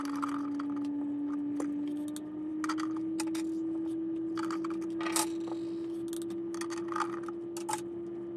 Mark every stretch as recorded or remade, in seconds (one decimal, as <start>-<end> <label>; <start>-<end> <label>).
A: 0.0-8.4 recorded